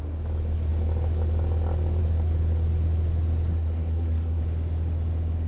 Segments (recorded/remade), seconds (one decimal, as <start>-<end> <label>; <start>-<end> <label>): 0.0-3.5 recorded; 3.5-4.4 remade; 4.4-5.5 recorded